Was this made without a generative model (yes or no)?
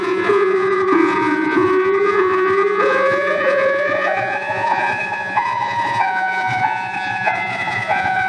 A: no